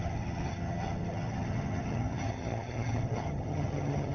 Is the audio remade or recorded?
remade